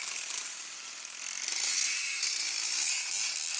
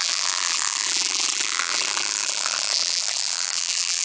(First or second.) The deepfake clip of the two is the second